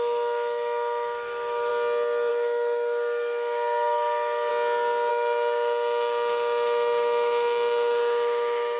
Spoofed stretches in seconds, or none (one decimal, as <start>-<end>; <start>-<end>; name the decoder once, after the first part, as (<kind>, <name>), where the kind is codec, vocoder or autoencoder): 0.0-1.7 (autoencoder, DAC-VAE); 2.3-4.5; 5.1-8.8